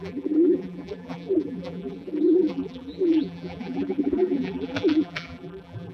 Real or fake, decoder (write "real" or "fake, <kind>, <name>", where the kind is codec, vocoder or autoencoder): fake, vocoder, BigVGAN v2